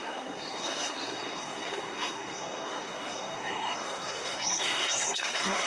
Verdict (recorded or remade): remade